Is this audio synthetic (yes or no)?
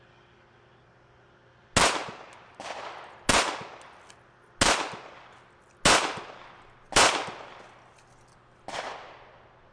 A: no